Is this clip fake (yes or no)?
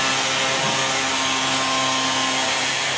no